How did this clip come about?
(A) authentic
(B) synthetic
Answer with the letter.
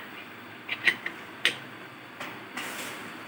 A